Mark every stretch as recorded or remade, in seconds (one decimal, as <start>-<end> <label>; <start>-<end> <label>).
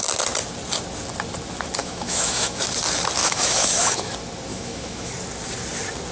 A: 0.0-1.8 recorded; 1.8-2.6 remade; 2.6-3.2 recorded; 3.2-4.1 remade; 4.1-4.5 recorded; 4.5-5.1 remade; 5.1-6.1 recorded